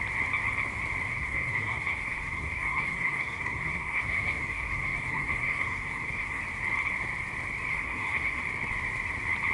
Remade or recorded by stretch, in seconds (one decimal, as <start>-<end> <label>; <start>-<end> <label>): 0.0-1.1 recorded; 1.1-6.4 remade; 6.4-7.7 recorded; 7.7-8.4 remade; 8.4-9.5 recorded